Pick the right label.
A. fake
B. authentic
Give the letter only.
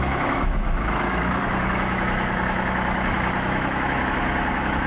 A